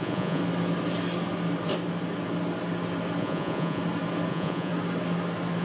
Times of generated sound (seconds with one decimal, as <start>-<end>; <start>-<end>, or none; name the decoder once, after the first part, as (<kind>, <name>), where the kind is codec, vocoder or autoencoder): 0.0-0.4 (vocoder, Vocos); 3.2-3.8; 4.3-4.7